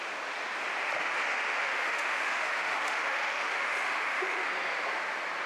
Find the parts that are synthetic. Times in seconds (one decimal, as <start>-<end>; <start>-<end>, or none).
1.6-4.5

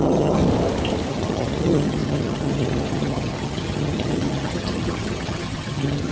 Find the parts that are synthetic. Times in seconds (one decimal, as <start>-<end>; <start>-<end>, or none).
0.0-0.4; 1.1-6.1

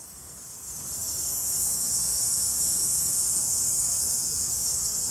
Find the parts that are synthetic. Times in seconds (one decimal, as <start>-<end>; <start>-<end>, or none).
0.0-5.1

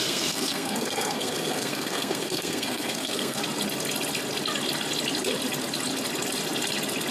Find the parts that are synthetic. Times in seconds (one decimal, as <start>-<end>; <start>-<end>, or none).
0.0-3.4

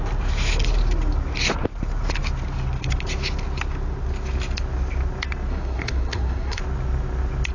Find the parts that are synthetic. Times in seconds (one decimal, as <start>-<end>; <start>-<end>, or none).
5.5-6.6